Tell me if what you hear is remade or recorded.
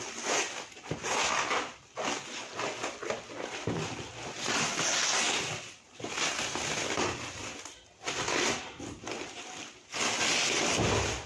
recorded